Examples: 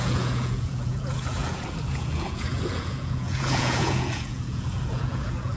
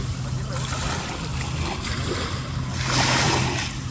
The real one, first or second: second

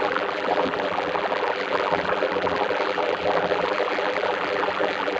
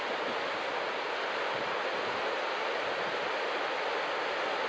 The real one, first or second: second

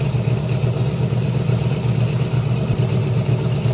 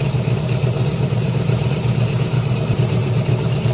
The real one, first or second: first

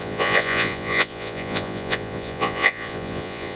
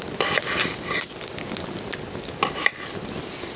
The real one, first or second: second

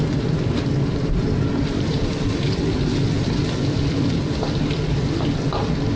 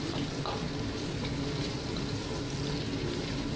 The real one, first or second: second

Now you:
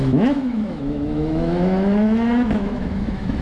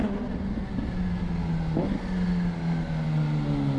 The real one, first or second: second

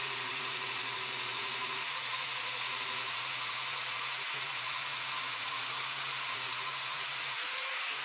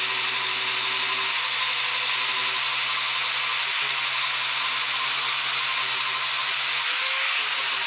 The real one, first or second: second